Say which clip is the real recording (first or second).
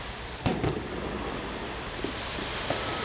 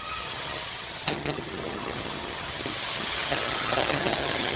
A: first